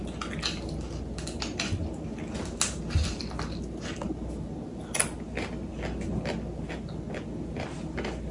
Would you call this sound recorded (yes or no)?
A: yes